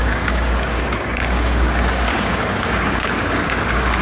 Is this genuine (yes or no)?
no